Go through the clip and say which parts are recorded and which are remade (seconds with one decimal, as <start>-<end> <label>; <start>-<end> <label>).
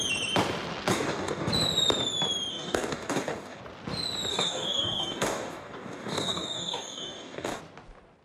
0.0-0.9 recorded; 0.9-1.5 remade; 1.5-2.5 recorded; 2.5-3.6 remade; 3.6-4.3 recorded; 4.3-7.6 remade; 7.6-8.2 recorded